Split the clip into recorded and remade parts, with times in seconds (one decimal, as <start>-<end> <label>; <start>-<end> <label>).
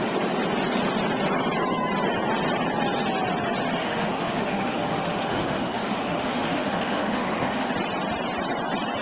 0.0-3.8 recorded; 3.8-7.7 remade; 7.7-9.0 recorded